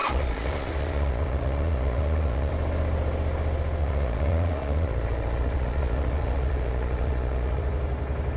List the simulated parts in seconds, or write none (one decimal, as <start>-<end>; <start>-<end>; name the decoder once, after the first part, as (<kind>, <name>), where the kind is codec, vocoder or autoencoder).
0.0-2.5 (vocoder, Vocos); 3.8-7.6